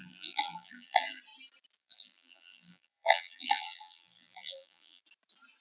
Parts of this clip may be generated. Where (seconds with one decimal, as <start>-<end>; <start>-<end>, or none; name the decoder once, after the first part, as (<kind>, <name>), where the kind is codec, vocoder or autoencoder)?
0.0-1.2 (vocoder, BigVGAN v2); 1.8-5.0